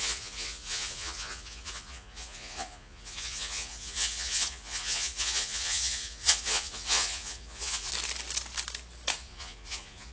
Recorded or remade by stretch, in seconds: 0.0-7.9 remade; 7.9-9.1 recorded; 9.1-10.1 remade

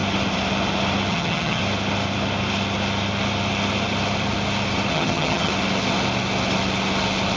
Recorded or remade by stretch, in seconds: 0.0-1.1 recorded; 1.1-1.6 remade; 1.6-4.9 recorded; 4.9-5.5 remade; 5.5-7.4 recorded

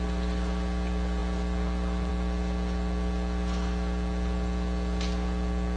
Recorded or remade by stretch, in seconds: 0.0-5.8 recorded